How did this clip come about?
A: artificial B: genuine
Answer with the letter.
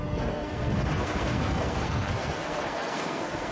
A